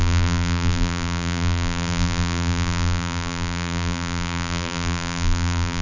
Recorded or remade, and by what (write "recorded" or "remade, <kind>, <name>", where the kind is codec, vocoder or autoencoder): remade, vocoder, BigVGAN v2